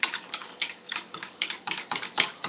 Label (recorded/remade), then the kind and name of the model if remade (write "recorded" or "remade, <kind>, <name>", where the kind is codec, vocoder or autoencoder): remade, codec, DAC